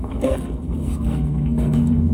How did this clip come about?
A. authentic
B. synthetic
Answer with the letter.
B